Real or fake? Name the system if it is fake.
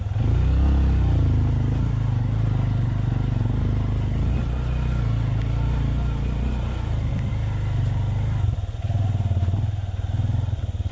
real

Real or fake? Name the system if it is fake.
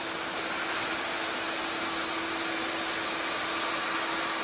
real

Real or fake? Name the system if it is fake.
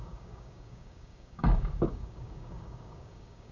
fake, codec, DAC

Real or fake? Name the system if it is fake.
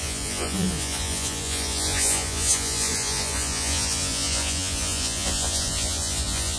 fake, vocoder, Vocos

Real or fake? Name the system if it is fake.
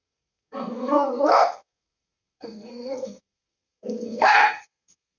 fake, codec, SNAC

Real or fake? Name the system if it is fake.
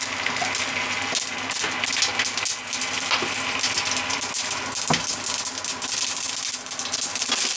real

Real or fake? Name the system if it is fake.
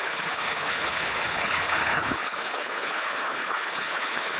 fake, codec, HILCodec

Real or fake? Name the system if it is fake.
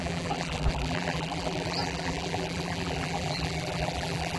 fake, vocoder, BigVGAN v2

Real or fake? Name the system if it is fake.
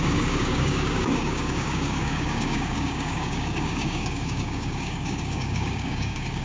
fake, codec, DAC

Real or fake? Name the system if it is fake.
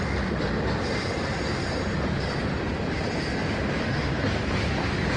real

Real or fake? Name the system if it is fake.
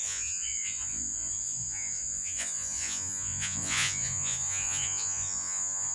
fake, vocoder, Vocos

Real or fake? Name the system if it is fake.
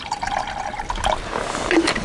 real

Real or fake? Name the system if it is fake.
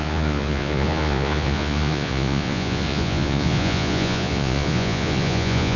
fake, vocoder, Vocos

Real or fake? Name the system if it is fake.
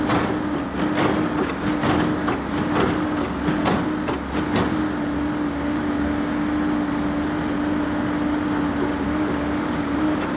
real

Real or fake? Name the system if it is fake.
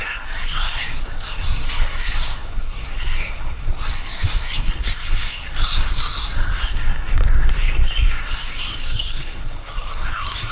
fake, codec, SNAC